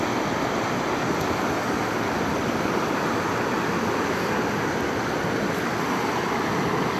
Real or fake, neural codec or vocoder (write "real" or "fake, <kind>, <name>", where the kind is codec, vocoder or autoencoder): real